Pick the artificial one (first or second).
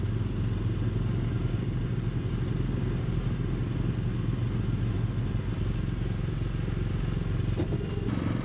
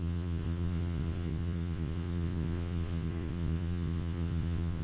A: second